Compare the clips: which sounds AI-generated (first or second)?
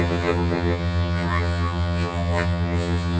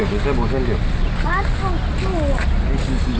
first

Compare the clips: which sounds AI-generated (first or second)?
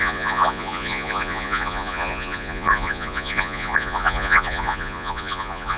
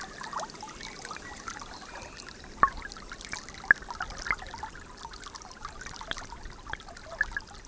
first